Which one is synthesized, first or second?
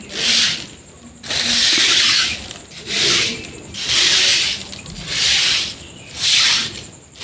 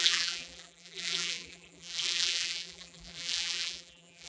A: second